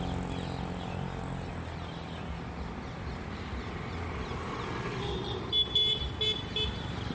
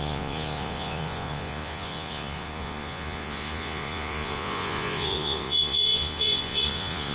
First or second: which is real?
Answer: first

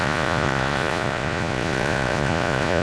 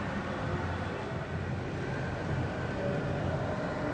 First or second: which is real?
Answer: second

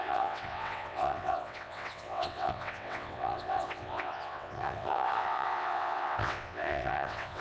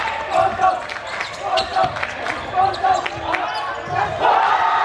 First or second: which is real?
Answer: second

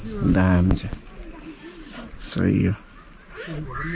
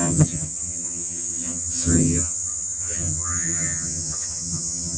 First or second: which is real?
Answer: first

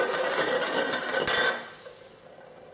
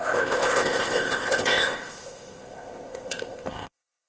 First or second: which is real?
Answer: first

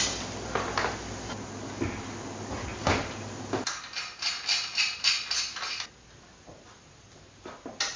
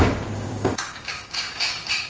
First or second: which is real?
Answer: first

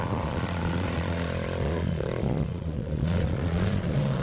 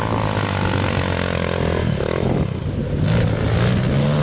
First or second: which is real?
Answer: second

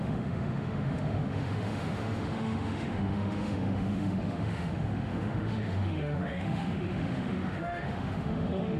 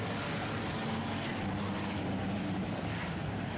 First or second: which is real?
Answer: second